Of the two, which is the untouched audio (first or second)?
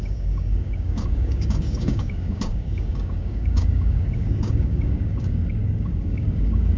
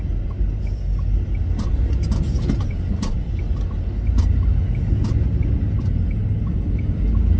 second